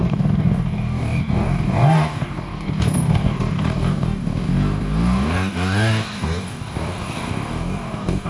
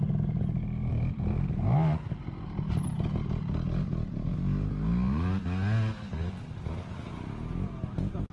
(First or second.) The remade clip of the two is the first